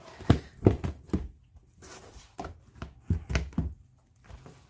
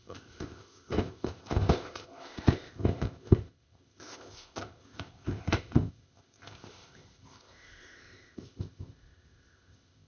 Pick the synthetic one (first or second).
second